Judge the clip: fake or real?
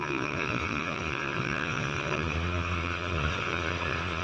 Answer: fake